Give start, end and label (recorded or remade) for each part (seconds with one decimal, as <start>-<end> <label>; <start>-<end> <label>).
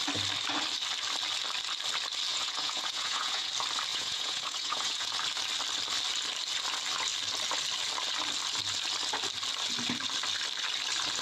0.0-2.3 recorded; 2.3-3.5 remade; 3.5-3.9 recorded; 3.9-5.1 remade; 5.1-11.2 recorded